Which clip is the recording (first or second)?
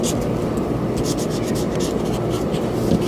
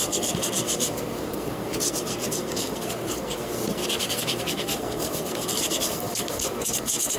first